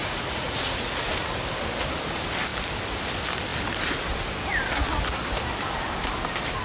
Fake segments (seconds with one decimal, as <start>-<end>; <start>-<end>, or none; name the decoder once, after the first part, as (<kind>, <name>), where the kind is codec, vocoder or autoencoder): 0.0-1.1 (vocoder, Vocos)